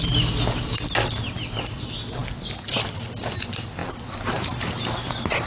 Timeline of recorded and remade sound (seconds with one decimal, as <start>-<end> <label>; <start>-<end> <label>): 0.0-5.5 recorded